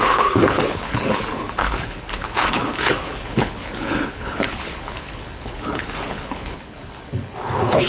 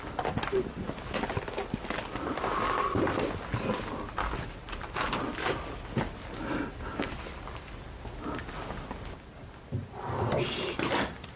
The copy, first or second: first